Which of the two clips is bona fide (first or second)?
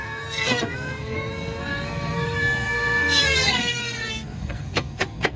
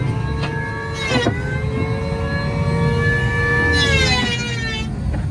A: second